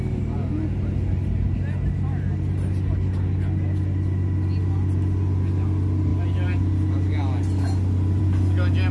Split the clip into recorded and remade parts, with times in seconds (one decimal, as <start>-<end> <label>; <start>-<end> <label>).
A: 0.0-8.9 recorded